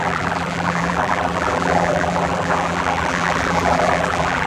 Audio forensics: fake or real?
fake